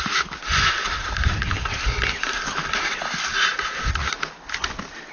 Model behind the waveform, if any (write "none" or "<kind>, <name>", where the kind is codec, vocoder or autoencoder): none